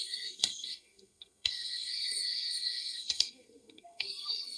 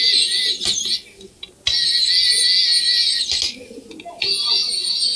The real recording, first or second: second